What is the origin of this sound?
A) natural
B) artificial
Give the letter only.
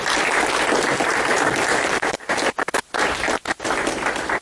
A